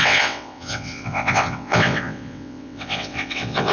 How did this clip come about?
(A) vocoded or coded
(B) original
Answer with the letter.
A